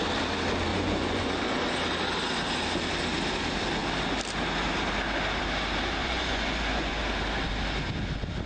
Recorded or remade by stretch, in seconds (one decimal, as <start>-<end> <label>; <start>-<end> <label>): 0.0-0.7 recorded; 0.7-1.4 remade; 1.4-6.0 recorded; 6.0-7.0 remade; 7.0-8.5 recorded

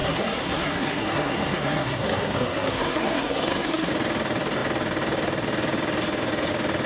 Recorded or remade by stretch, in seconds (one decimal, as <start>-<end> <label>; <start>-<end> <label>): 0.0-3.9 remade; 3.9-6.9 recorded

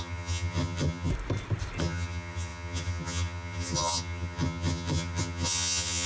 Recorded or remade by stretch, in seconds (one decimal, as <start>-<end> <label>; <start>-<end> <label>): 0.0-1.1 remade; 1.1-1.8 recorded; 1.8-6.1 remade

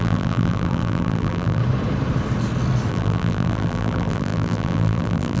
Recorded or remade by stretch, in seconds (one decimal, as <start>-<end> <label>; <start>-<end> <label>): 0.0-1.6 remade; 1.6-2.9 recorded; 2.9-5.4 remade

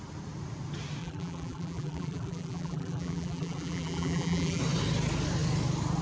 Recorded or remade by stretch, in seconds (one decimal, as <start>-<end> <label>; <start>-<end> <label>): 0.0-1.0 recorded; 1.0-4.6 remade; 4.6-6.0 recorded

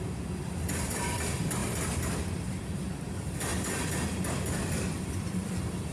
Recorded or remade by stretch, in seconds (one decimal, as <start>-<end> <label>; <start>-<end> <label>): 0.0-1.6 remade; 1.6-2.4 recorded; 2.4-3.5 remade; 3.5-4.6 recorded; 4.6-5.9 remade

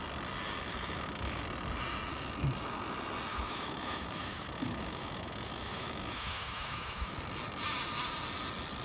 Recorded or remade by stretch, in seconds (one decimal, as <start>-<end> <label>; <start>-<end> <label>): 0.0-0.7 recorded; 0.7-1.4 remade; 1.4-3.3 recorded; 3.3-7.1 remade; 7.1-8.8 recorded